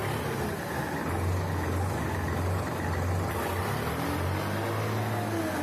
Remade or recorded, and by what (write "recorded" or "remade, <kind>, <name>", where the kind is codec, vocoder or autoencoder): recorded